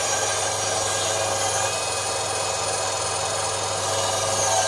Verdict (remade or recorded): recorded